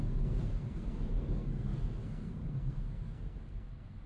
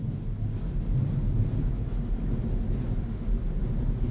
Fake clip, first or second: first